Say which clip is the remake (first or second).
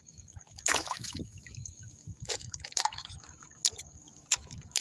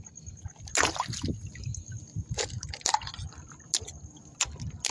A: first